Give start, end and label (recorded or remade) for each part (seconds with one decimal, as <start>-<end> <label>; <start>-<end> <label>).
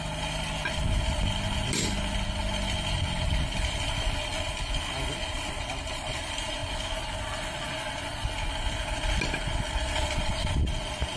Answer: 0.0-11.2 recorded